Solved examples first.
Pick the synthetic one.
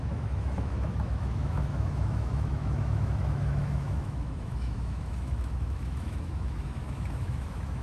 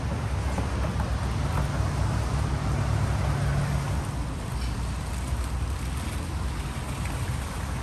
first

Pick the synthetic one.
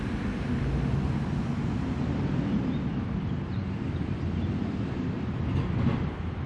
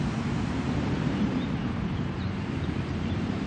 second